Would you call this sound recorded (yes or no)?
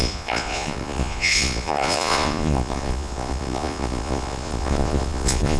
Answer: no